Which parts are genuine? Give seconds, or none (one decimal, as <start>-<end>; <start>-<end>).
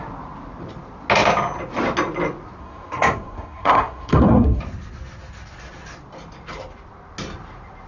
0.0-2.6; 4.6-7.9